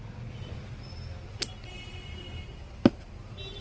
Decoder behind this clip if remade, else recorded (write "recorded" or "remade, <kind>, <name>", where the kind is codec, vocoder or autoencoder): recorded